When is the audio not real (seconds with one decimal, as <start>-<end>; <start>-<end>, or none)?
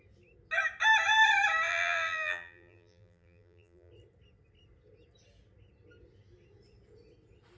1.7-3.9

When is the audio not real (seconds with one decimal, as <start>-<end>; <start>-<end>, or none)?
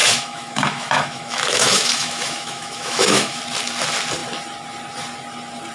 0.0-3.4